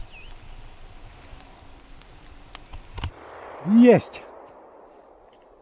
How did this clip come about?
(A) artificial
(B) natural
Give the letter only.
B